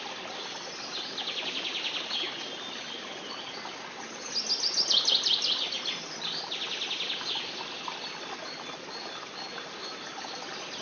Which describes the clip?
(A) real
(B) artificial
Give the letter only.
A